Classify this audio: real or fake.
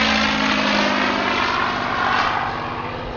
real